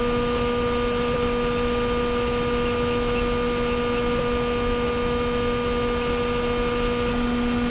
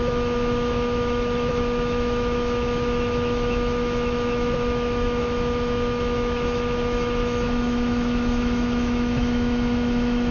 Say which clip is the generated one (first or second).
second